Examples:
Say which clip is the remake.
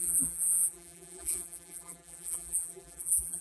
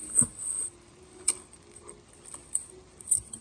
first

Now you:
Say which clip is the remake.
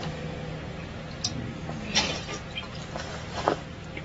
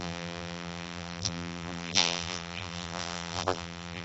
second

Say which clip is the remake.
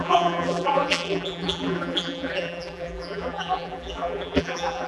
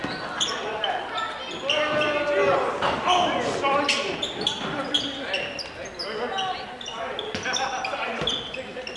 first